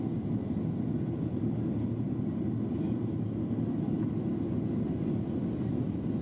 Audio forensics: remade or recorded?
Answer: recorded